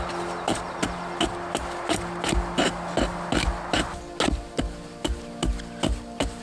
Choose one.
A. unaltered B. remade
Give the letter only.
A